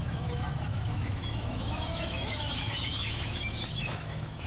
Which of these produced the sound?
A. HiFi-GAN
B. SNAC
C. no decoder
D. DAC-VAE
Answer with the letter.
D